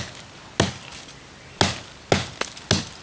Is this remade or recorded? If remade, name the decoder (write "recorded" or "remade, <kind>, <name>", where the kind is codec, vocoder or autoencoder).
recorded